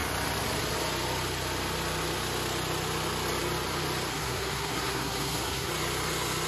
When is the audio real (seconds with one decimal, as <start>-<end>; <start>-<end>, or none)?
0.0-4.1; 5.7-6.5